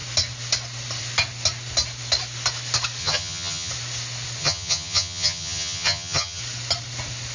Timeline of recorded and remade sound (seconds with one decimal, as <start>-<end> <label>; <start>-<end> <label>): 0.0-3.0 recorded; 3.0-3.7 remade; 3.7-4.4 recorded; 4.4-6.4 remade; 6.4-7.3 recorded